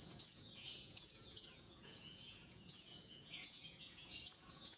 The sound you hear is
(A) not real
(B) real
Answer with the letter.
A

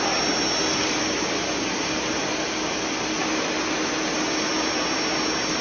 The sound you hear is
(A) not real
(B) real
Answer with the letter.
B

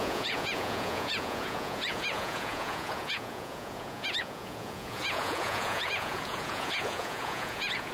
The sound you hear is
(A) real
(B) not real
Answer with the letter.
B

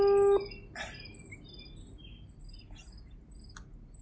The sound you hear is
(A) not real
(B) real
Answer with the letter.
B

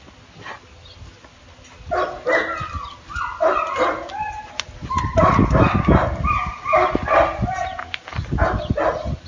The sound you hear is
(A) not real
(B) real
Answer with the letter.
B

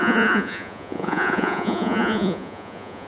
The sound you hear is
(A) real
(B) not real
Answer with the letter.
B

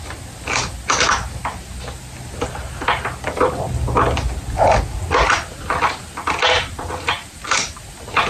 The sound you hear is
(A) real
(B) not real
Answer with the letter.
A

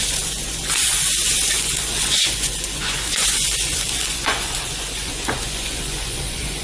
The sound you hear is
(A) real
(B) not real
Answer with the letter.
B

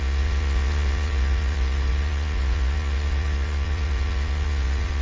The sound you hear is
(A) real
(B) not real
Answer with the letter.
B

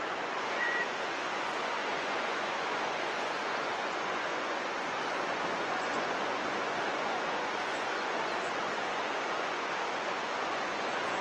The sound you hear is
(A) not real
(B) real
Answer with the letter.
A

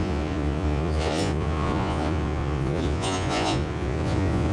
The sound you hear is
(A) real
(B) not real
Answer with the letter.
B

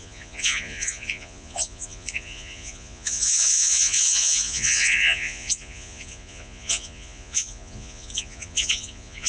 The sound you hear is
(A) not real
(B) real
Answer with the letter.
A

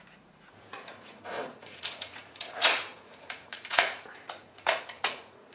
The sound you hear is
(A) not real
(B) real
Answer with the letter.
A